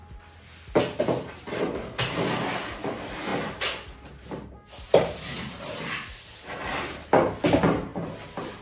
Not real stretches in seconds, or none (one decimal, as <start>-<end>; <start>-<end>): 7.9-8.6